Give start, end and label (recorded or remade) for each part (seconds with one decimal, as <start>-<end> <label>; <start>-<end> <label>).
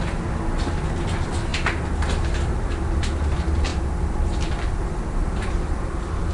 0.0-6.3 recorded